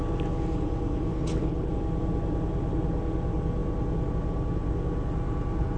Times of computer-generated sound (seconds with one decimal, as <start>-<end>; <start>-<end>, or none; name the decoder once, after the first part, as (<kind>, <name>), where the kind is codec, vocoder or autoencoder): 1.1-1.7 (codec, HILCodec)